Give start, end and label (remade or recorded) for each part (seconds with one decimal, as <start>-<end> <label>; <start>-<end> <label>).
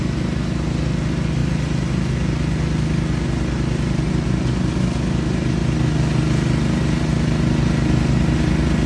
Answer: 0.0-8.9 recorded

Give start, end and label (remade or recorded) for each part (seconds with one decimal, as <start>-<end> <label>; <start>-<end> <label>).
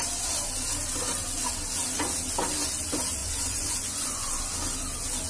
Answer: 0.0-3.2 recorded; 3.2-4.4 remade; 4.4-5.3 recorded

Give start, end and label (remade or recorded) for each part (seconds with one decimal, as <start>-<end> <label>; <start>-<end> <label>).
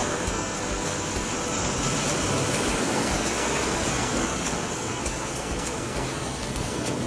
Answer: 0.0-1.3 remade; 1.3-2.8 recorded; 2.8-7.1 remade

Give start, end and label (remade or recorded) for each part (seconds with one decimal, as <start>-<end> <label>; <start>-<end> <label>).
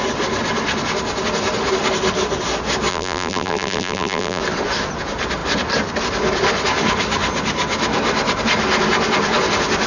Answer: 0.0-2.9 recorded; 2.9-4.4 remade; 4.4-9.9 recorded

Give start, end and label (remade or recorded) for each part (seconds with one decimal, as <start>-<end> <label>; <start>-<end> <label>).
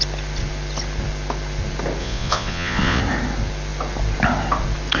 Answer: 0.0-2.0 recorded; 2.0-3.0 remade; 3.0-5.0 recorded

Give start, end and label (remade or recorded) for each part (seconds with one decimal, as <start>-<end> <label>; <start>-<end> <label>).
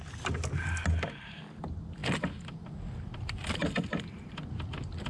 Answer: 0.0-5.1 recorded